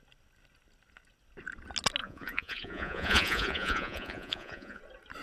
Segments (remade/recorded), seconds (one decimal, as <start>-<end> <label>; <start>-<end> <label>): 0.0-2.0 recorded; 2.0-4.8 remade; 4.8-5.2 recorded